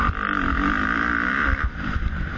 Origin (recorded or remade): remade